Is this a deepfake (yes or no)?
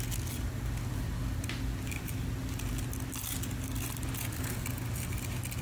no